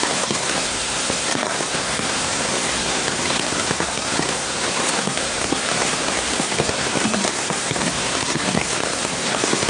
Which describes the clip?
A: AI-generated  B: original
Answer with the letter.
A